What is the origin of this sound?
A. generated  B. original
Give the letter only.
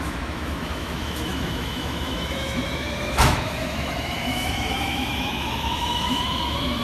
A